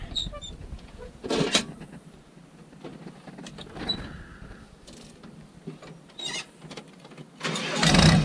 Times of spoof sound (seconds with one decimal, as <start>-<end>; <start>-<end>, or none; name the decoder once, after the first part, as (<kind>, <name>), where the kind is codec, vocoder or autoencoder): 0.6-1.3 (vocoder, Vocos)